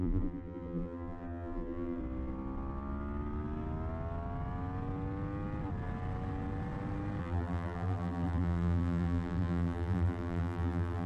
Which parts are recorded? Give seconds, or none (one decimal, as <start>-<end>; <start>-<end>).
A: 2.0-7.2